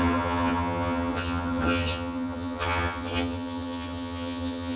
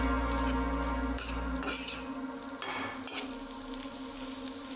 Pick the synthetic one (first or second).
first